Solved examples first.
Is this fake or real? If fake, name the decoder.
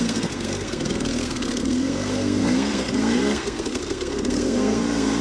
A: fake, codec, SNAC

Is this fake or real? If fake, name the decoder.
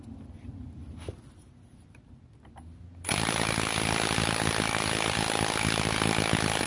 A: real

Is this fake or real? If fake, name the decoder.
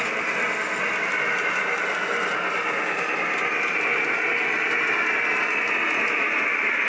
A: real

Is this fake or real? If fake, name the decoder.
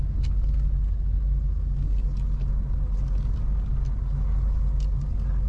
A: real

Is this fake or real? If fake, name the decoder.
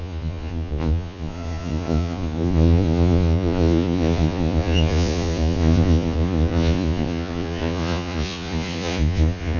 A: fake, vocoder, Vocos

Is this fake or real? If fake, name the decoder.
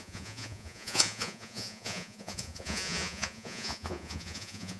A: fake, vocoder, Vocos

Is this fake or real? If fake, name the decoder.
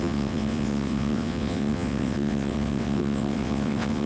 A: fake, vocoder, WaveNeXt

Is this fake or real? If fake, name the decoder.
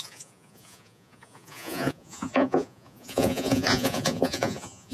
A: fake, vocoder, Vocos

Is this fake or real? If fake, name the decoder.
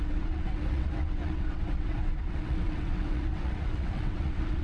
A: fake, vocoder, WaveNeXt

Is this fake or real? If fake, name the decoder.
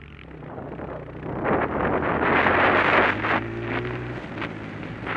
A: real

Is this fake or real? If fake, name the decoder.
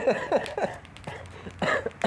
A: real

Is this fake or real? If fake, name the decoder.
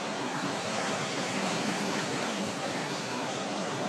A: fake, codec, SNAC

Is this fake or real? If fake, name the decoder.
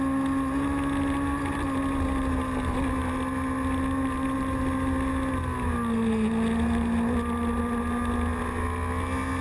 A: real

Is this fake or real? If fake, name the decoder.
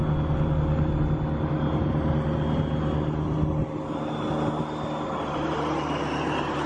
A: real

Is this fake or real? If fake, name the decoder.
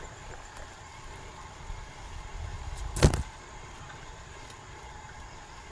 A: fake, vocoder, BigVGAN v2